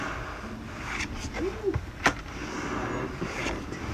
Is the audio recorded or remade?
recorded